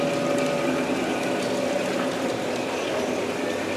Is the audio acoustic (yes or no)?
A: yes